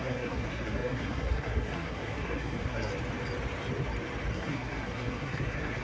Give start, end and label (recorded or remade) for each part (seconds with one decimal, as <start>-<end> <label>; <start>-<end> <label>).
0.0-2.9 remade; 2.9-4.3 recorded; 4.3-5.8 remade

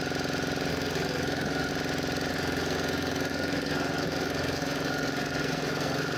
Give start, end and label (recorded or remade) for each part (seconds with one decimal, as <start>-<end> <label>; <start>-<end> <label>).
0.0-0.7 recorded; 0.7-1.7 remade; 1.7-2.3 recorded; 2.3-6.2 remade

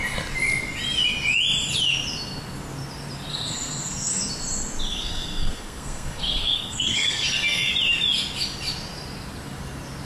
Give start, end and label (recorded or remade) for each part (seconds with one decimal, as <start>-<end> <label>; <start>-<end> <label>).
0.0-3.3 recorded; 3.3-4.2 remade; 4.2-4.9 recorded; 4.9-7.7 remade; 7.7-10.0 recorded

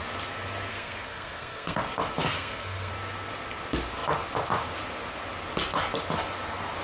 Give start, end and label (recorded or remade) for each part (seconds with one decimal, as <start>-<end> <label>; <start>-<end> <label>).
0.0-0.7 recorded; 0.7-1.8 remade; 1.8-2.3 recorded; 2.3-2.9 remade; 2.9-6.8 recorded

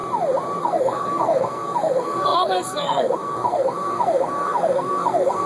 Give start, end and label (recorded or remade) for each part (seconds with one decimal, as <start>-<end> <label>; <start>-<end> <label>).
0.0-0.6 recorded; 0.6-5.5 remade

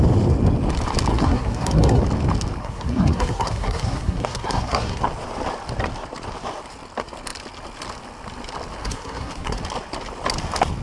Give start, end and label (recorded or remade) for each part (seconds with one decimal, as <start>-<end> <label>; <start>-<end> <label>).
0.0-1.1 recorded; 1.1-2.0 remade; 2.0-2.6 recorded; 2.6-5.0 remade; 5.0-8.8 recorded; 8.8-9.6 remade; 9.6-10.8 recorded

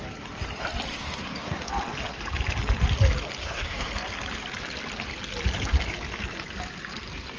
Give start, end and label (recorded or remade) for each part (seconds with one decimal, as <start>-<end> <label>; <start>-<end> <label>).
0.0-0.9 recorded; 0.9-1.6 remade; 1.6-3.4 recorded; 3.4-3.9 remade; 3.9-7.4 recorded